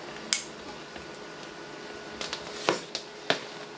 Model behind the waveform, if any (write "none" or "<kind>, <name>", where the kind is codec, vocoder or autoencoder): none